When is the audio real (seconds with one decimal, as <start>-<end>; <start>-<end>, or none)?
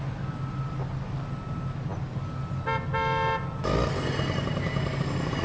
0.0-5.4